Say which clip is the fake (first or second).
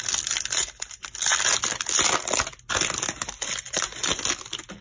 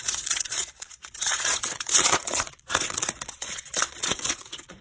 second